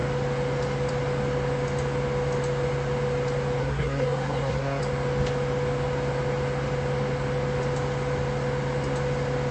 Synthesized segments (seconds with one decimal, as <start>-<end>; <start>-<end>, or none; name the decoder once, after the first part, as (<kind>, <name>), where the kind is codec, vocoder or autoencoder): 3.6-4.8 (codec, SNAC)